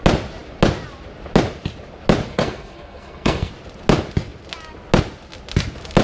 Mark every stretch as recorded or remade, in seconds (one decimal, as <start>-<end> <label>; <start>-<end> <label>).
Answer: 0.0-2.3 recorded; 2.3-3.5 remade; 3.5-6.0 recorded